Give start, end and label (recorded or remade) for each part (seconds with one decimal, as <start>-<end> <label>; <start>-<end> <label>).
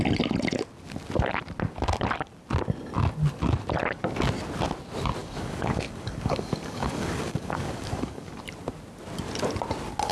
0.0-5.2 recorded; 5.2-8.4 remade; 8.4-10.1 recorded